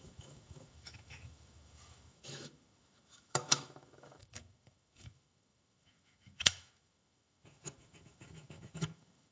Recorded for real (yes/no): no